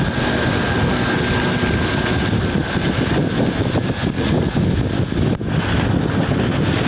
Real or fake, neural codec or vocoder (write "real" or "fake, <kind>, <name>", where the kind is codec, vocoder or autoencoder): real